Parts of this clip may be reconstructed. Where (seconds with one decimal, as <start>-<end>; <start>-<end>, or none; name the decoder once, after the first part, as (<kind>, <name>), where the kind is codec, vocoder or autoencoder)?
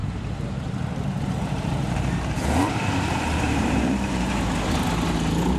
0.0-0.7 (vocoder, BigVGAN v2); 1.1-4.5